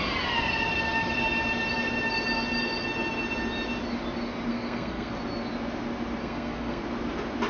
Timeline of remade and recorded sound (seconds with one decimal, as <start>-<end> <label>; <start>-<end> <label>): 0.0-4.5 recorded; 4.5-5.1 remade; 5.1-6.2 recorded; 6.2-6.8 remade; 6.8-7.5 recorded